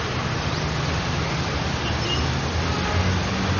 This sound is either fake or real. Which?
real